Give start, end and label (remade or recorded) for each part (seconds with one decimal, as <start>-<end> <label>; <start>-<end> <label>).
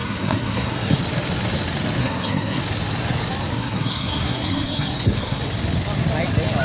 0.0-1.0 remade; 1.0-2.0 recorded; 2.0-2.6 remade; 2.6-3.5 recorded; 3.5-5.4 remade; 5.4-6.6 recorded